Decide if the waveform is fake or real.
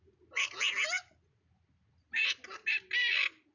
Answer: real